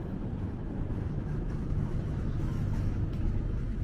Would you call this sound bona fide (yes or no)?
no